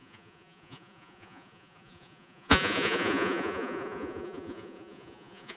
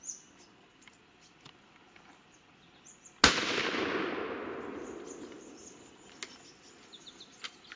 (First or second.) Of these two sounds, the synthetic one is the first